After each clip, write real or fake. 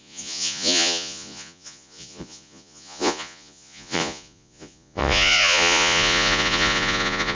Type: fake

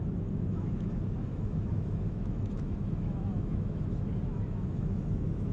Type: fake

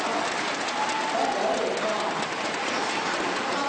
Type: real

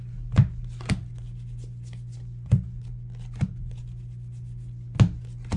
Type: real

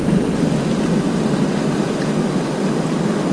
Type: real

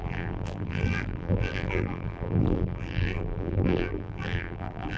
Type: fake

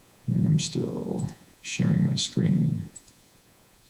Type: fake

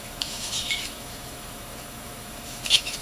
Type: fake